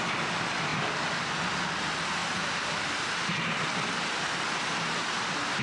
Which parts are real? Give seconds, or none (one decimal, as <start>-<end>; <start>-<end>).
0.0-5.6